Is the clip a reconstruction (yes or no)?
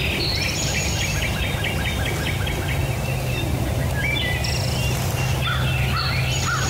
no